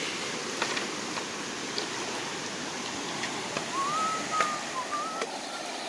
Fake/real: real